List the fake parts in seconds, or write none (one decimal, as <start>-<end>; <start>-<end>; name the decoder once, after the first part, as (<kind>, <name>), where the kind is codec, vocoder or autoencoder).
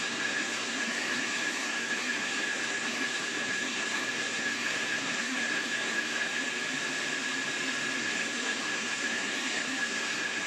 0.0-6.4 (codec, SNAC); 8.0-10.5